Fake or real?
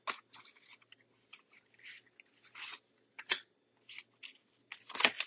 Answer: real